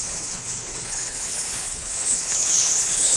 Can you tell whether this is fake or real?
fake